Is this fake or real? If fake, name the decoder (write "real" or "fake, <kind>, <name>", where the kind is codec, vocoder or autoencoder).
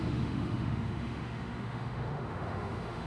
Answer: fake, autoencoder, DAC-VAE